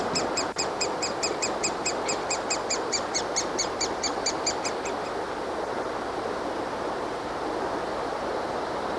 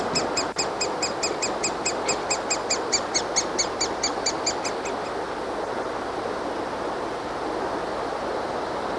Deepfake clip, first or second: first